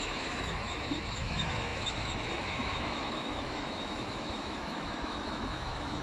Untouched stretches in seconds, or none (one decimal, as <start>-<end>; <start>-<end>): none